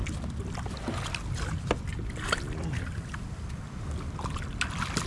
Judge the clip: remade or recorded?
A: recorded